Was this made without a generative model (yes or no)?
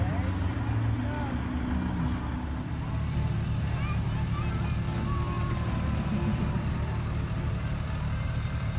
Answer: yes